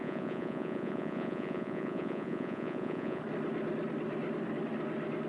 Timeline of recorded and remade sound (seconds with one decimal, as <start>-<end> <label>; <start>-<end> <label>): 0.0-3.2 remade; 3.2-5.3 recorded